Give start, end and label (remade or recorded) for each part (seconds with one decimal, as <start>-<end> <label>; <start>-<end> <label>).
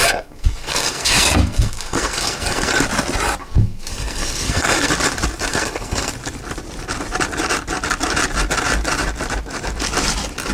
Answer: 0.0-2.8 remade; 2.8-3.4 recorded; 3.4-4.9 remade; 4.9-5.5 recorded; 5.5-6.1 remade; 6.1-10.5 recorded